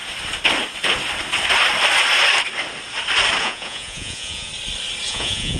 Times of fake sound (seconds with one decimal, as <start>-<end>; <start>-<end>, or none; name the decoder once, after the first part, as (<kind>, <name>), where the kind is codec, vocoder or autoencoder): 3.4-4.5 (vocoder, Vocos); 5.1-5.6